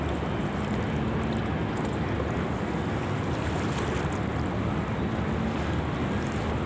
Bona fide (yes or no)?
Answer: yes